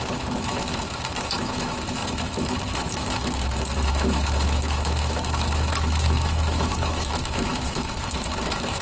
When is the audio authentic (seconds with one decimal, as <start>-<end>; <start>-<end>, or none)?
none